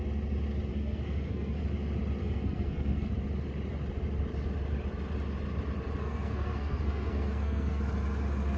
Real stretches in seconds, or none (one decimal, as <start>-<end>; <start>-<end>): 0.0-0.7; 1.6-2.2; 3.1-6.0; 7.8-8.6